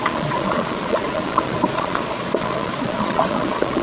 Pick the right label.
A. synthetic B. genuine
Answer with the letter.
A